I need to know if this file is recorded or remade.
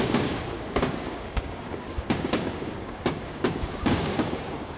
remade